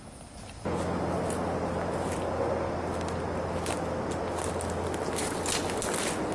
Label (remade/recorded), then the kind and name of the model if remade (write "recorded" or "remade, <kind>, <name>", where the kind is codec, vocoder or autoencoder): recorded